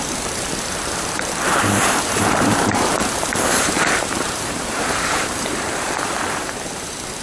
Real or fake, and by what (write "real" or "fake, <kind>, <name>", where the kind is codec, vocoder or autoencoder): fake, vocoder, BigVGAN v2